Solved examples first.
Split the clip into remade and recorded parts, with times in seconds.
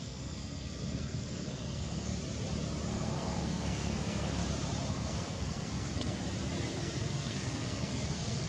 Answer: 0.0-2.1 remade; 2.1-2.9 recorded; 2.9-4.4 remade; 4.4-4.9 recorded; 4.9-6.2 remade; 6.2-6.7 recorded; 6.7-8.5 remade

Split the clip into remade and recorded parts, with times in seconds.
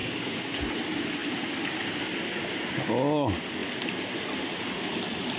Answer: 0.0-0.6 remade; 0.6-5.4 recorded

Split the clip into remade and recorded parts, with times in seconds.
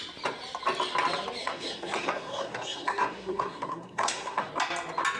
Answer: 0.0-1.4 recorded; 1.4-4.5 remade; 4.5-5.2 recorded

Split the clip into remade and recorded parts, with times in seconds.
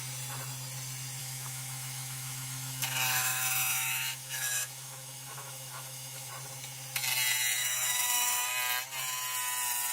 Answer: 0.0-1.2 recorded; 1.2-6.3 remade; 6.3-7.6 recorded; 7.6-8.5 remade; 8.5-9.9 recorded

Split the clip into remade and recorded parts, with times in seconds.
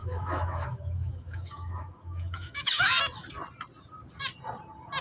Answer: 0.0-3.0 remade; 3.0-5.0 recorded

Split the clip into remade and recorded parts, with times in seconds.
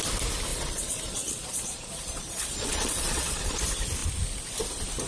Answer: 0.0-0.5 recorded; 0.5-3.6 remade; 3.6-5.1 recorded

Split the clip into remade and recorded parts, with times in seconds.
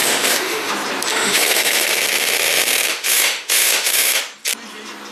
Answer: 0.0-0.7 remade; 0.7-1.1 recorded; 1.1-4.2 remade; 4.2-5.1 recorded